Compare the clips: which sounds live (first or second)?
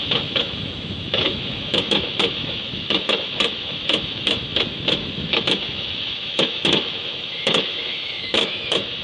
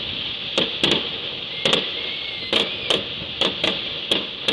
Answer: second